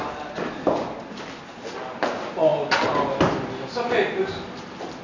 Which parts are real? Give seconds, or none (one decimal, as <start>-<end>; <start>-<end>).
0.0-5.0

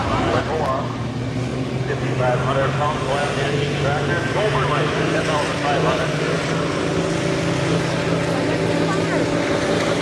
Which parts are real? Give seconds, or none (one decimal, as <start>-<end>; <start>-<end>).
0.0-4.3; 5.2-10.0

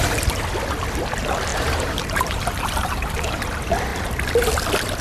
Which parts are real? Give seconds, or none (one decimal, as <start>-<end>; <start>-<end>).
0.0-1.5; 3.4-5.0

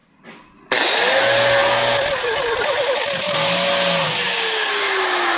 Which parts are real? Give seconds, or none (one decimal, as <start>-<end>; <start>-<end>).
0.0-5.4

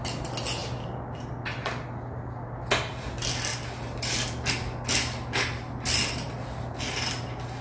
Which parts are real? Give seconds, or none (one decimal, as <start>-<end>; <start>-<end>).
0.0-7.6